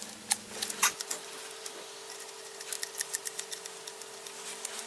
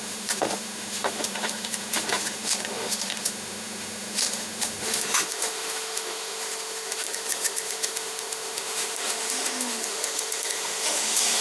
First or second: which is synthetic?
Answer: second